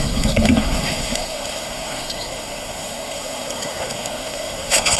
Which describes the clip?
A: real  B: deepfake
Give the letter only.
B